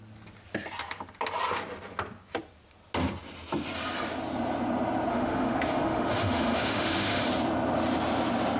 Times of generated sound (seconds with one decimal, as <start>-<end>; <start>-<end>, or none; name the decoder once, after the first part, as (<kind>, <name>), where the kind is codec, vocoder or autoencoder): 5.1-7.3 (autoencoder, DAC-VAE)